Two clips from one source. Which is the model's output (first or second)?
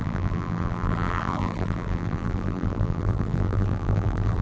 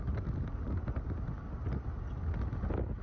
first